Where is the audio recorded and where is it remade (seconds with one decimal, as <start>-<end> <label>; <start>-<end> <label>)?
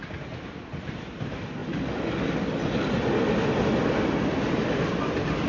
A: 0.0-5.5 recorded